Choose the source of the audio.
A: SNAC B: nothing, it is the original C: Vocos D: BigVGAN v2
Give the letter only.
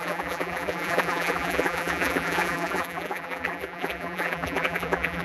D